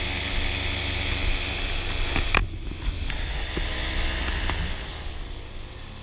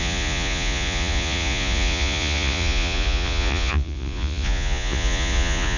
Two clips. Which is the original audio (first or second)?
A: first